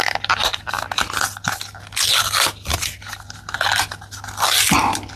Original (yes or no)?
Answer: yes